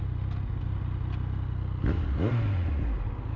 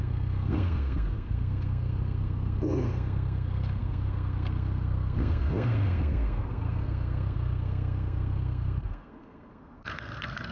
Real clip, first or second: first